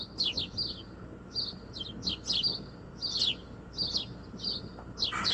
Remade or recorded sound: recorded